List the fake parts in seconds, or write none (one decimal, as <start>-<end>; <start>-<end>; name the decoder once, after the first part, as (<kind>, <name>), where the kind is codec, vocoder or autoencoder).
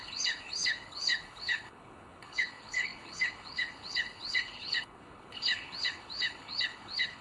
0.0-7.2 (codec, HILCodec)